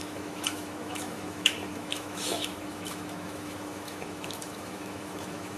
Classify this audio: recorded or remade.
remade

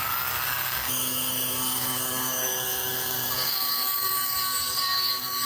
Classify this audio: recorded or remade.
remade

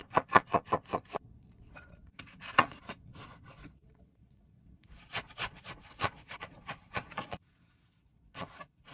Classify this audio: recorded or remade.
remade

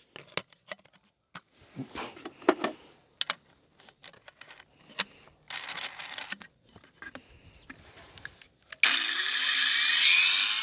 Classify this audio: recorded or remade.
recorded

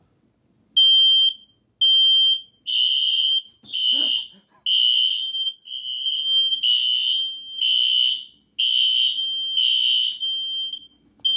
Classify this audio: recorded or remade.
recorded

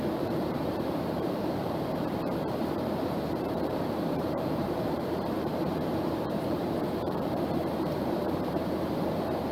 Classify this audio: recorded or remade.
remade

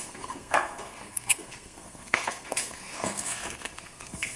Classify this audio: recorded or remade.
remade